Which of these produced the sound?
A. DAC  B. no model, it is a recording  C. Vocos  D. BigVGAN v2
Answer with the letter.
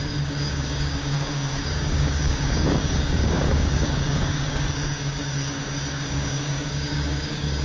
A